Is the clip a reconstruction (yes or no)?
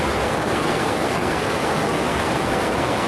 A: yes